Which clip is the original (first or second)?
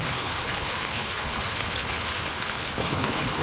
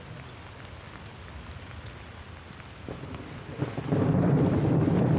second